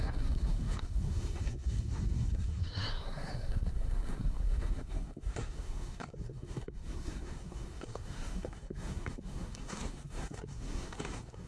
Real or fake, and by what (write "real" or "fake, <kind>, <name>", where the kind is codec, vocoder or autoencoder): fake, codec, SNAC